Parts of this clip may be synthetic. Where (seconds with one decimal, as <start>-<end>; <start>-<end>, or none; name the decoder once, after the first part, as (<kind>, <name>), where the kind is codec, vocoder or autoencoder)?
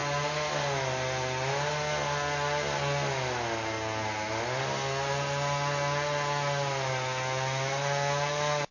none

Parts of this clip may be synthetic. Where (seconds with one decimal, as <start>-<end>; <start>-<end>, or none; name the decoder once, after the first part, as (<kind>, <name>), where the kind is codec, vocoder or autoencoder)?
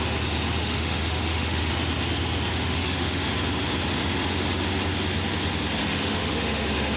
0.6-1.7 (autoencoder, DAC-VAE); 2.5-3.3; 5.8-7.0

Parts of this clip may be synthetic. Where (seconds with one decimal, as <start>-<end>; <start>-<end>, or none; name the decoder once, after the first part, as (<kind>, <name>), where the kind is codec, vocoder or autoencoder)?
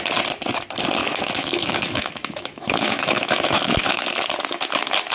1.0-4.1 (autoencoder, DAC-VAE)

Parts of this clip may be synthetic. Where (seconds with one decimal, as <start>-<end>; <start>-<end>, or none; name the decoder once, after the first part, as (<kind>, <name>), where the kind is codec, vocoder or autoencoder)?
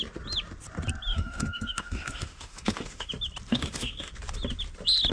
1.1-3.1 (autoencoder, DAC-VAE); 3.5-4.1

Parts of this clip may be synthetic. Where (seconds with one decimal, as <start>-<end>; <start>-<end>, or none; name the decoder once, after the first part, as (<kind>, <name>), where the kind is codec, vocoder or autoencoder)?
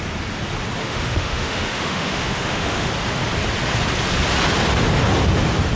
0.8-2.9 (autoencoder, DAC-VAE)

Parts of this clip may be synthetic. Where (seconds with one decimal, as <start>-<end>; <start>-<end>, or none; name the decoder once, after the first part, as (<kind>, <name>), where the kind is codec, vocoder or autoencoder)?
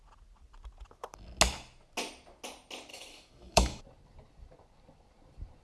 2.9-3.8 (autoencoder, DAC-VAE)